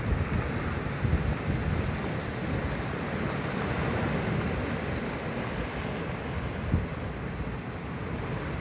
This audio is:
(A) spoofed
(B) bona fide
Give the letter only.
B